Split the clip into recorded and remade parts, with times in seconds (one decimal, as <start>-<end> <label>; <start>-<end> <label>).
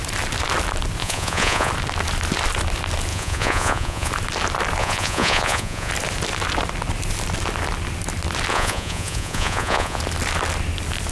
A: 0.0-1.0 recorded; 1.0-1.7 remade; 1.7-3.1 recorded; 3.1-4.1 remade; 4.1-4.8 recorded; 4.8-5.9 remade; 5.9-8.5 recorded; 8.5-10.0 remade; 10.0-11.1 recorded